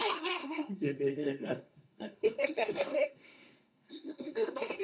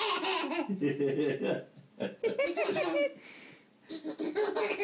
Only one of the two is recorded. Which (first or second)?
second